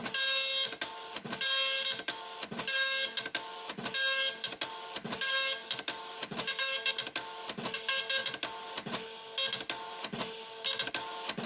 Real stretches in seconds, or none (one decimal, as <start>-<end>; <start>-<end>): 0.0-11.5